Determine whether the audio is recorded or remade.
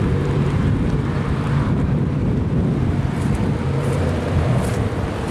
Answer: remade